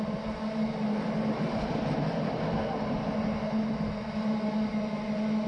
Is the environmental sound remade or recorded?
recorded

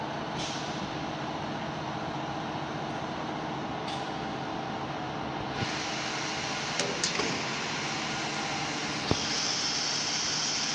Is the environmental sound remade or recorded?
recorded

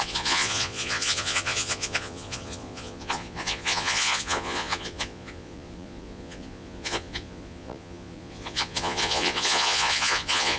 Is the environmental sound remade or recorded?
remade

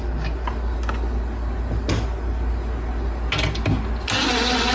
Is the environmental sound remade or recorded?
recorded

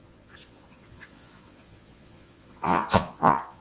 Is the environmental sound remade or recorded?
remade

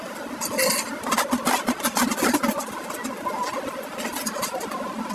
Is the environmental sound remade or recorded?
recorded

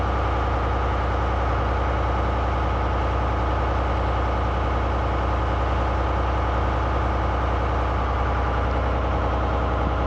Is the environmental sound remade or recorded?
recorded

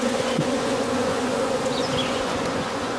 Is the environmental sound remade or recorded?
remade